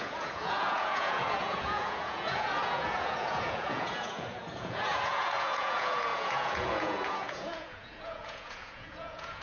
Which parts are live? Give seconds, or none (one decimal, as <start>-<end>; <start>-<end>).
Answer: none